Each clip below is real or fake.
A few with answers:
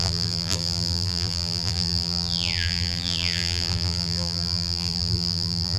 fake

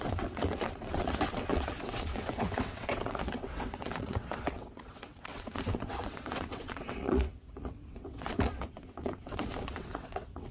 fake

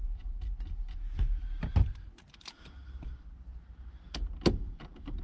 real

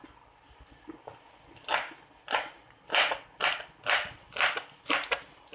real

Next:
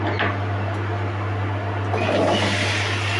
real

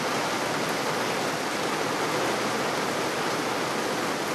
real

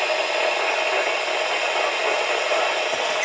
real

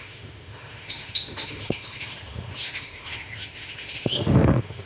fake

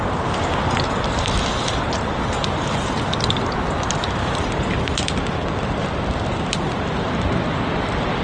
real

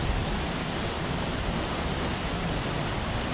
real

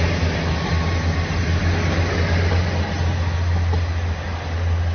real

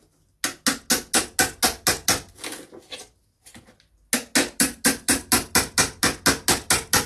real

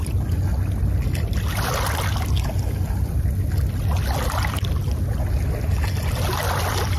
real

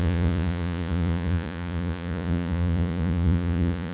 fake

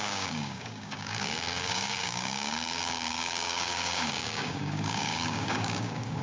fake